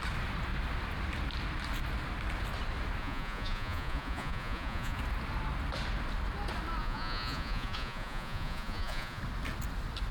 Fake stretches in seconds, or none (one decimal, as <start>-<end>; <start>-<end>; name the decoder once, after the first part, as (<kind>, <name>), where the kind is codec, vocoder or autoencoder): 3.0-5.0 (vocoder, Vocos); 6.8-9.2